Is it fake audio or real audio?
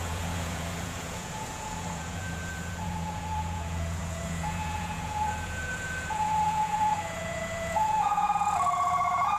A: fake